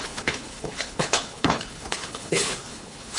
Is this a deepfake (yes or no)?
yes